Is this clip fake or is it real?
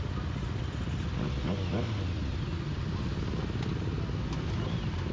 real